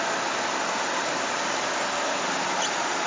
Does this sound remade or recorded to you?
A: recorded